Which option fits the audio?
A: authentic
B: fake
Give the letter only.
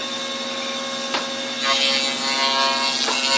A